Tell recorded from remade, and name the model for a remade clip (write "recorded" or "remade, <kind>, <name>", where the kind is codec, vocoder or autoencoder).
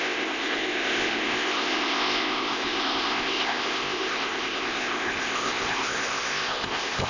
remade, codec, ZipCodec